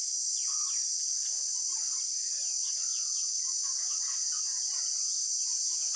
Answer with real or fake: real